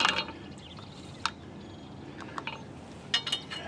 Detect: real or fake real